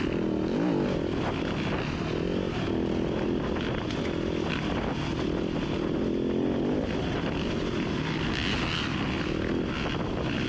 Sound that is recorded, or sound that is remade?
recorded